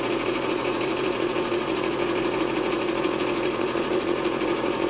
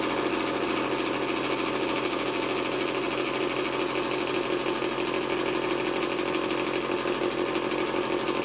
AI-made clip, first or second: first